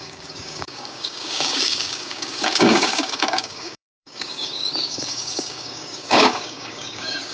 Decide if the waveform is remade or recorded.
remade